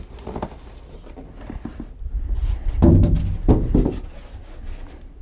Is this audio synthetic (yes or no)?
no